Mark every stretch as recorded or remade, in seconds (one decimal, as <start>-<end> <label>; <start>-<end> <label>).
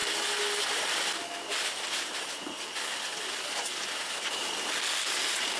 0.0-5.6 recorded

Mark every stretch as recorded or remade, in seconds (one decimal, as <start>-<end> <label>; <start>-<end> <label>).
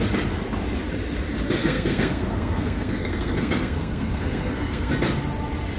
0.0-1.6 recorded; 1.6-4.9 remade; 4.9-5.8 recorded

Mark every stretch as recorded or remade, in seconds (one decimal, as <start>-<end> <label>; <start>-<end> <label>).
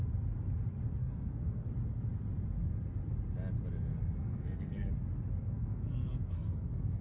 0.0-1.0 recorded; 1.0-1.7 remade; 1.7-3.9 recorded; 3.9-4.9 remade; 4.9-5.4 recorded; 5.4-7.0 remade